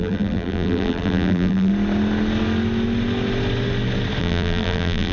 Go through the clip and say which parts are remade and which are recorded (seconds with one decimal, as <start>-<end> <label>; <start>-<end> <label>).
0.0-1.7 remade; 1.7-4.2 recorded; 4.2-5.1 remade